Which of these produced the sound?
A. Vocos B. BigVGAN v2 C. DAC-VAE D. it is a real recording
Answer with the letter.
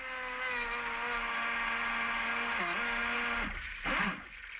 D